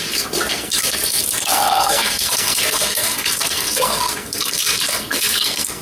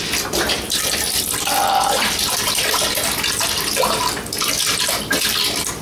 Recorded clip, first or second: second